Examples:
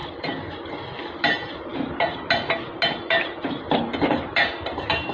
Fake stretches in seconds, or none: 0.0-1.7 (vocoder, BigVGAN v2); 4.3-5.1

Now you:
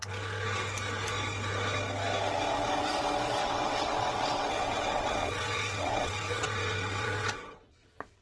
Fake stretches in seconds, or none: 3.4-8.2 (vocoder, WaveNeXt)

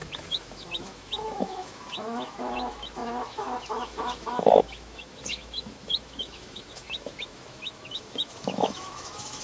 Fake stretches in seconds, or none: 0.0-9.4 (autoencoder, DAC-VAE)

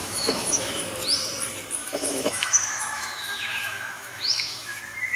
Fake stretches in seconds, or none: 0.0-0.8 (autoencoder, DAC-VAE); 1.8-4.8

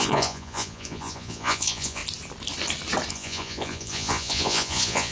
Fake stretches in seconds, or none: 0.0-2.0 (vocoder, Vocos); 3.1-5.1

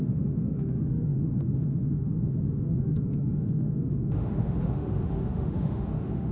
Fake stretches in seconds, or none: 0.0-6.3 (autoencoder, DAC-VAE)

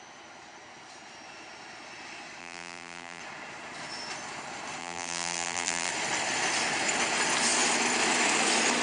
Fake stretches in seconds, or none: 2.4-3.2 (vocoder, BigVGAN v2); 4.8-5.9